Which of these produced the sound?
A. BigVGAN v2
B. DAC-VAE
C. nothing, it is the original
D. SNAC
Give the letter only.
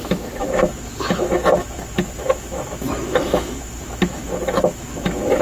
B